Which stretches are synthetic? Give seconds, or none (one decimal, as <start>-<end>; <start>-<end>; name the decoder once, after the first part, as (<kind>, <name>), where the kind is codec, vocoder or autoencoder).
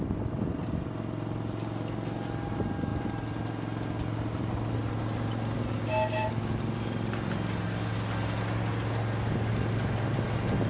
none